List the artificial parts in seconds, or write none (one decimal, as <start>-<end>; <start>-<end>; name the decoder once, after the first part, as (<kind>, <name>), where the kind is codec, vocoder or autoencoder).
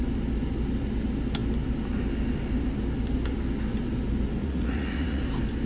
4.4-5.2 (vocoder, Vocos)